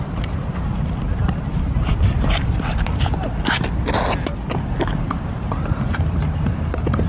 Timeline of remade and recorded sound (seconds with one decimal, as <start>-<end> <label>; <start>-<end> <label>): 0.0-0.7 remade; 0.7-5.0 recorded; 5.0-7.1 remade